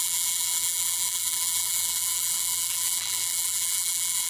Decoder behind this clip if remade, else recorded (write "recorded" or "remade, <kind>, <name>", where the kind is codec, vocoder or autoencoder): remade, vocoder, BigVGAN v2